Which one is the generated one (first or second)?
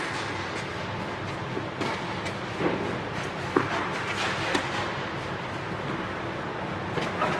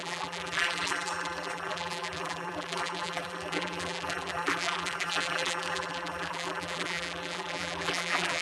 second